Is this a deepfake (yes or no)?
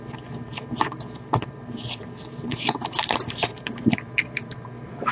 yes